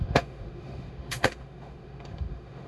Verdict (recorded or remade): remade